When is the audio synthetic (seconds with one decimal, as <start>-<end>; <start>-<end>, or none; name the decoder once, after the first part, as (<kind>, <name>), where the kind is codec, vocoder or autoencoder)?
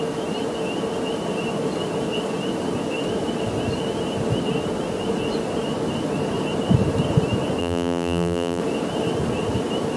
7.6-8.6 (vocoder, BigVGAN v2)